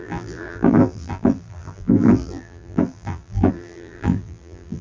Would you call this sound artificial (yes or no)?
yes